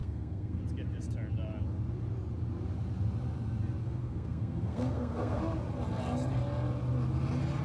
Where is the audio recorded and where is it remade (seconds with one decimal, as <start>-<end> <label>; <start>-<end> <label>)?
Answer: 0.0-0.6 remade; 0.6-3.8 recorded; 3.8-5.4 remade; 5.4-7.6 recorded